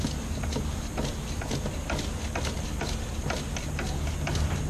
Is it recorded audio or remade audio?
recorded